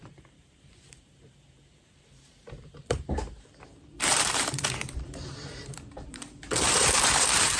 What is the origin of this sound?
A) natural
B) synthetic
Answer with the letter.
B